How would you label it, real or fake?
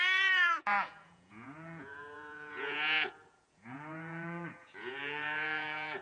fake